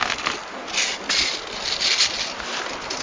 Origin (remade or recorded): recorded